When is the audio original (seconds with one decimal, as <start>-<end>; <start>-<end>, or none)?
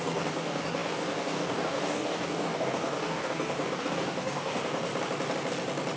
4.9-6.0